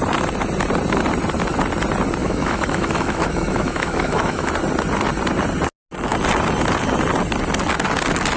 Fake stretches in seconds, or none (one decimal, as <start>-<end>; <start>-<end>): 2.2-4.5